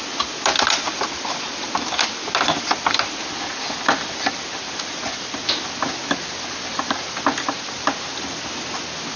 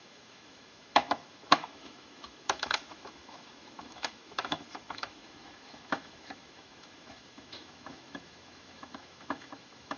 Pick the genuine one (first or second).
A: first